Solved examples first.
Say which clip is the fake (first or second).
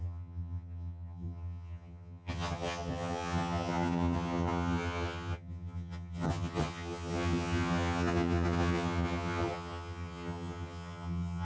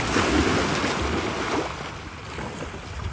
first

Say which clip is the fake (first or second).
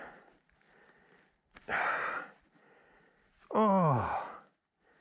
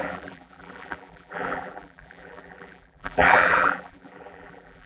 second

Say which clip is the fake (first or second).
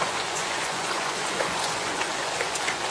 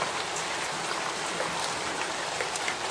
first